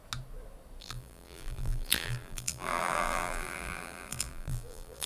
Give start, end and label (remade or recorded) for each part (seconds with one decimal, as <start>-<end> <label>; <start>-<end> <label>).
0.0-0.8 recorded; 0.8-5.1 remade